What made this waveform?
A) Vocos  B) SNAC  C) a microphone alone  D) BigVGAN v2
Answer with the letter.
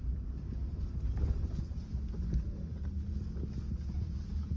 C